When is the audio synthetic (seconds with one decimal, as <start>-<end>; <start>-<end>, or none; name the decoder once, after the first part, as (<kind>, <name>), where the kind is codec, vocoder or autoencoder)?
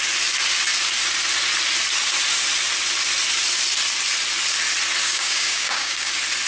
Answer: 5.0-6.1 (codec, DAC)